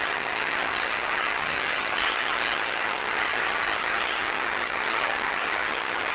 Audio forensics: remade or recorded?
remade